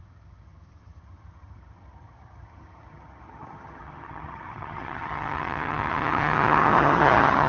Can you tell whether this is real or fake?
fake